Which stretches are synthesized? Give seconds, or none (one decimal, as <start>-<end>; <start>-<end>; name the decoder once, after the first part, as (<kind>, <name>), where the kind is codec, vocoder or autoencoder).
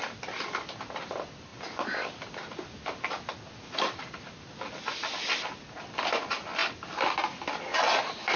6.6-7.4 (vocoder, BigVGAN v2)